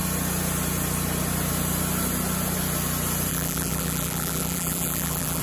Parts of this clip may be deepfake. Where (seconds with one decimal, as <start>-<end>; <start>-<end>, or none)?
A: 3.3-5.4